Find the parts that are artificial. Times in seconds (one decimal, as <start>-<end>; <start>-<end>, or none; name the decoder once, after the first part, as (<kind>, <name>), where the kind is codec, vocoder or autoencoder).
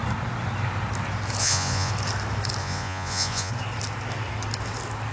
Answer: 1.4-1.9 (vocoder, Vocos); 2.6-3.5